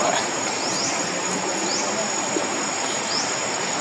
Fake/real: real